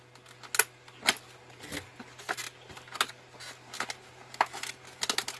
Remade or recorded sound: recorded